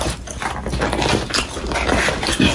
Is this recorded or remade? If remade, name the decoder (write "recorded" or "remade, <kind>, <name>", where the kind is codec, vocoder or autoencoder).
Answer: recorded